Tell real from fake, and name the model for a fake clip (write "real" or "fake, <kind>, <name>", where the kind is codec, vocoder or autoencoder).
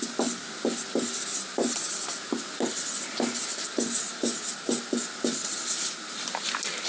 real